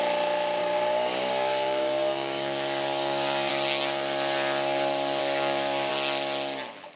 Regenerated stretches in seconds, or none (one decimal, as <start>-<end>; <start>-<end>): 0.6-3.5; 5.2-5.9